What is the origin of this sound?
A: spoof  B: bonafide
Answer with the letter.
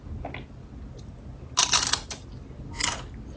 B